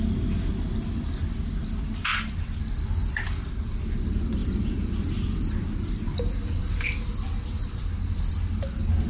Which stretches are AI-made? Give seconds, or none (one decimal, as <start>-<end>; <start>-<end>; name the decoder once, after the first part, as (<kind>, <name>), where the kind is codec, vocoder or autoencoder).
2.1-2.6 (vocoder, BigVGAN v2); 4.4-5.1